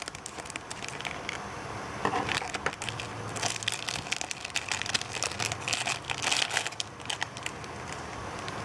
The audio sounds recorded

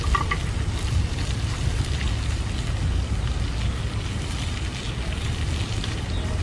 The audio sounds recorded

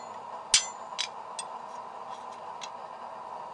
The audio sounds recorded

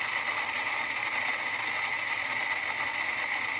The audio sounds recorded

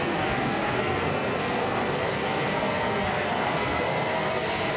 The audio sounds remade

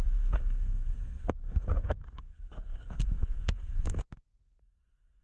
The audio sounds remade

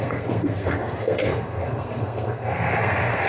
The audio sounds remade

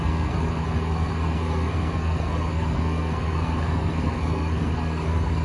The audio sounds remade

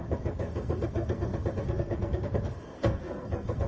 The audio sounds remade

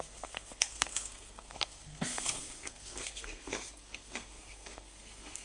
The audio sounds remade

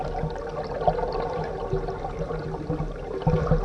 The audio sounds recorded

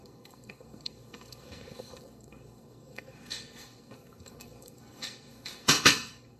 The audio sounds remade